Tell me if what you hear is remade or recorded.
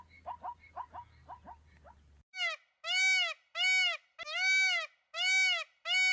recorded